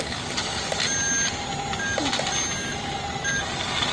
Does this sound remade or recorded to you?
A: recorded